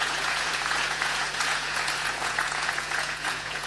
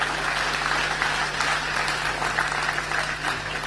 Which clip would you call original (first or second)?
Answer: second